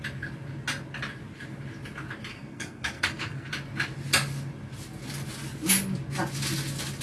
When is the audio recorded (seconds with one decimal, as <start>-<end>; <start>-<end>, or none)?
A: 0.0-2.3; 3.5-7.0